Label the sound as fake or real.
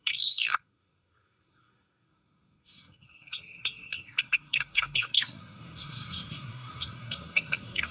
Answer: fake